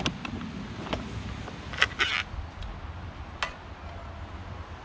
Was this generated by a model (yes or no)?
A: no